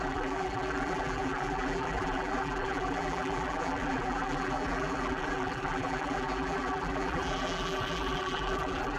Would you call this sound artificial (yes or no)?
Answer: yes